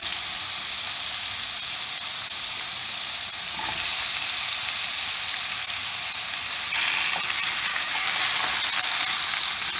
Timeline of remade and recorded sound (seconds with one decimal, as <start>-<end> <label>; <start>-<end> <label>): 0.0-7.7 recorded; 7.7-8.2 remade; 8.2-9.8 recorded